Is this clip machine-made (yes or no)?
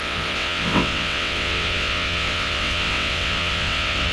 yes